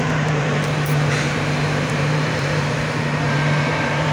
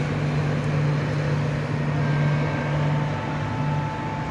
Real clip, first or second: second